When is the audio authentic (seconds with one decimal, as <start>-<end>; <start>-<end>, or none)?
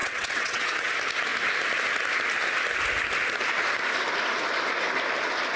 0.9-5.6